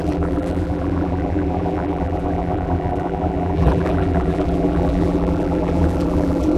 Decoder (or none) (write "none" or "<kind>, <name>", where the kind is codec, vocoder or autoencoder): vocoder, BigVGAN v2